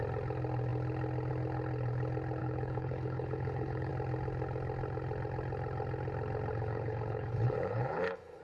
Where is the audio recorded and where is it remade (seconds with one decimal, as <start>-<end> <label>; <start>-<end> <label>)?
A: 0.0-2.4 recorded; 2.4-3.9 remade; 3.9-6.5 recorded; 6.5-8.4 remade